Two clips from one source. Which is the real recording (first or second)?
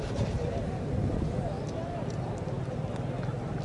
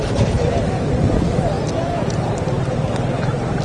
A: first